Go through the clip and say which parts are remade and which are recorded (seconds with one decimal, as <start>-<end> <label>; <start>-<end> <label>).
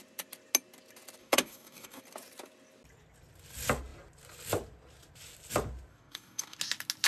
0.0-1.2 recorded; 1.2-2.0 remade; 2.0-5.9 recorded; 5.9-6.6 remade; 6.6-7.1 recorded